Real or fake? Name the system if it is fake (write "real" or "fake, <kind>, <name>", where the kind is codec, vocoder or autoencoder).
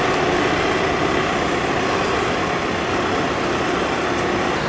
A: real